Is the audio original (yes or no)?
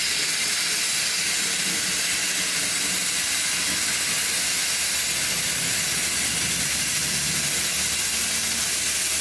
yes